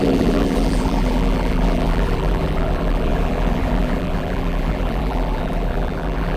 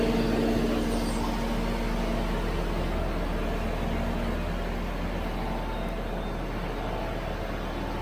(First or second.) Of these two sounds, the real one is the second